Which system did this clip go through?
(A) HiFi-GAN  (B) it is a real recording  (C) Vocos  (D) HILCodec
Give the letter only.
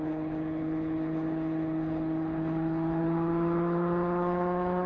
D